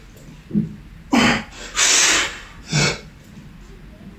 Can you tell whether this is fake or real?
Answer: real